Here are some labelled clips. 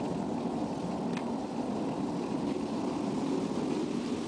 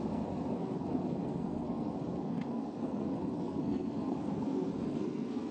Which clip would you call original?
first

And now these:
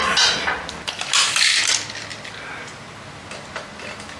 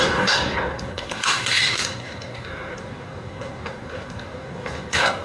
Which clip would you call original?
first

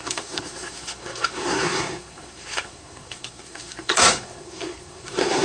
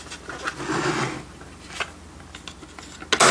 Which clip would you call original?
second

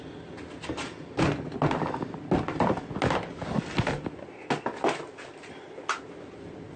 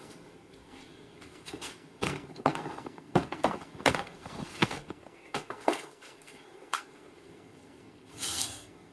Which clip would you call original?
first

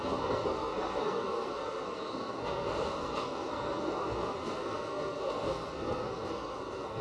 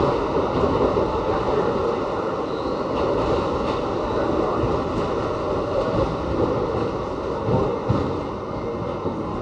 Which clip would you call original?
second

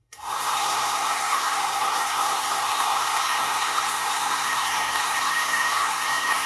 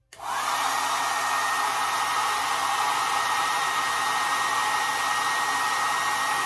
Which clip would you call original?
second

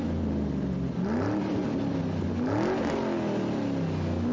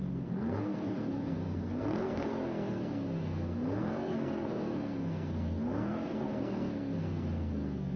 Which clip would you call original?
first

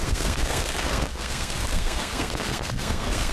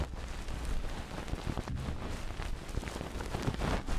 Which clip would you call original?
second